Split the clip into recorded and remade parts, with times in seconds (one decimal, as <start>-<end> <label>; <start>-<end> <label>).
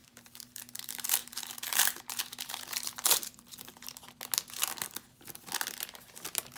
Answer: 0.0-0.6 remade; 0.6-1.2 recorded; 1.2-3.7 remade; 3.7-6.6 recorded